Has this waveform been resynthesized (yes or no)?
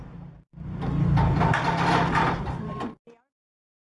yes